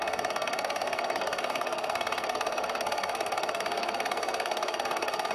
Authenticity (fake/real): fake